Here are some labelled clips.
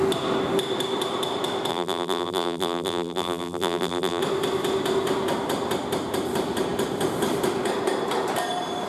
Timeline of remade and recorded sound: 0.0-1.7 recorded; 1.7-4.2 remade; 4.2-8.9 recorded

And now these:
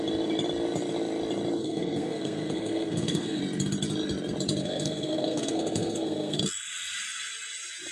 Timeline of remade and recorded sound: 0.0-1.6 recorded; 1.6-3.4 remade; 3.4-4.6 recorded; 4.6-6.4 remade; 6.4-7.9 recorded

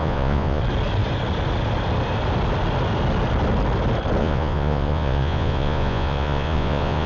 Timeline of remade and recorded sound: 0.0-0.6 remade; 0.6-4.2 recorded; 4.2-7.1 remade

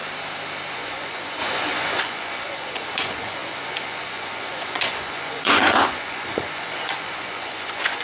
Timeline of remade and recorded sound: 0.0-0.7 recorded; 0.7-8.0 remade

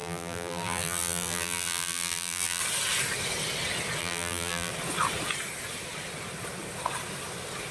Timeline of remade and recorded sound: 0.0-2.6 remade; 2.6-4.0 recorded; 4.0-4.7 remade; 4.7-7.7 recorded